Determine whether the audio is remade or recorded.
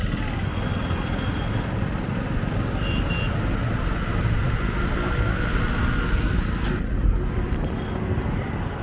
recorded